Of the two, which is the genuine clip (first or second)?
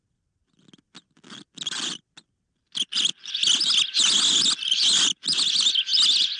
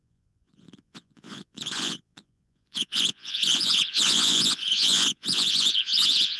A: first